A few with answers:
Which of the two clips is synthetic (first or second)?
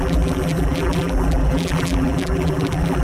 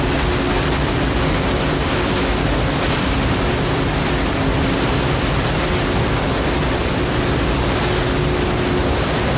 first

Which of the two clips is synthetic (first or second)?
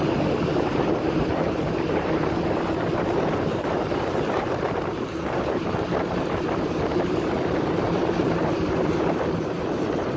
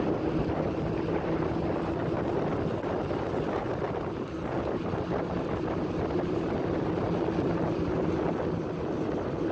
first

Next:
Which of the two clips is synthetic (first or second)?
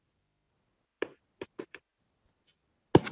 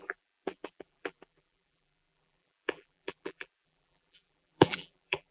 second